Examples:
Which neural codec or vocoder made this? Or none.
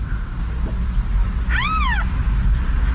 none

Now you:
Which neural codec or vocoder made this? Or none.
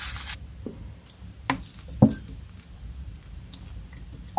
none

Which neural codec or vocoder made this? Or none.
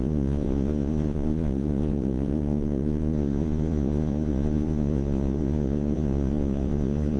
vocoder, Vocos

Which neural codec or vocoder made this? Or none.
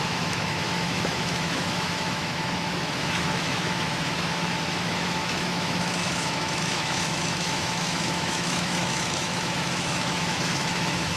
autoencoder, DAC-VAE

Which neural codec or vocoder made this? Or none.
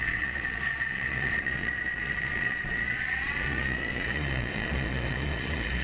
vocoder, Vocos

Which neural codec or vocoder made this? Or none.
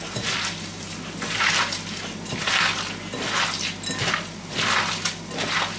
none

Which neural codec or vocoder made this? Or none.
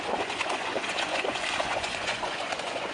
vocoder, Vocos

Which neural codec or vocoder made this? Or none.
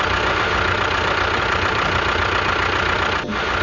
vocoder, BigVGAN v2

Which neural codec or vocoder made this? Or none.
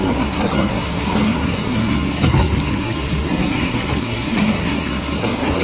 codec, SNAC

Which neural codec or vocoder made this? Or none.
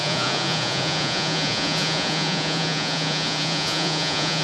vocoder, Vocos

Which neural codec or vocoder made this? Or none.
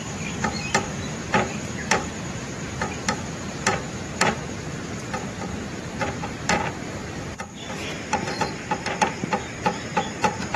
vocoder, BigVGAN v2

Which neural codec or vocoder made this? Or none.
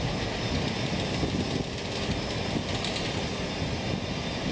none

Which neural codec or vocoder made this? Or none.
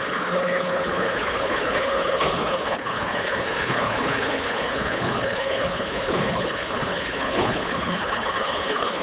codec, HILCodec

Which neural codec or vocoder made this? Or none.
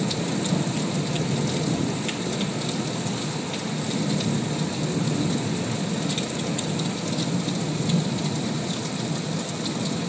none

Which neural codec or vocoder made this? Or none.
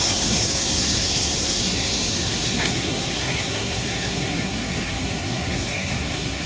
codec, SNAC